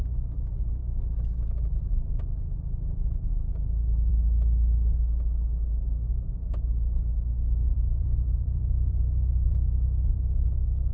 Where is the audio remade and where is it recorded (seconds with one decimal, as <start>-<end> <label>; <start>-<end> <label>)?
0.0-7.7 recorded; 7.7-8.6 remade; 8.6-10.9 recorded